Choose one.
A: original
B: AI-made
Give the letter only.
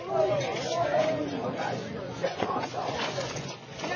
B